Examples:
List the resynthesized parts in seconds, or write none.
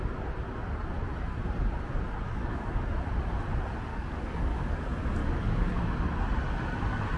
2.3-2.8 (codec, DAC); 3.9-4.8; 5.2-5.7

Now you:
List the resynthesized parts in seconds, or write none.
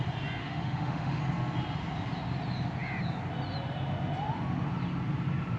0.4-1.2 (autoencoder, DAC-VAE)